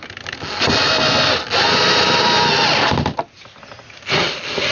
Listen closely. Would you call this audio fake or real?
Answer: real